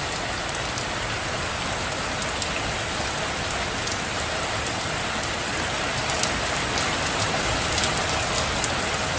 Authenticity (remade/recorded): recorded